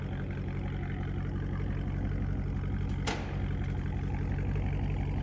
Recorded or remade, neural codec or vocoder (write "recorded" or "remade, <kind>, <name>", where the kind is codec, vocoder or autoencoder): recorded